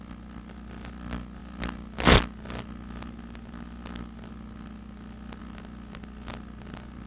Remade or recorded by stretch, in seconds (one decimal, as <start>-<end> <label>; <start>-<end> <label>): 0.0-7.1 recorded